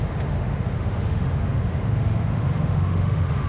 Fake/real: fake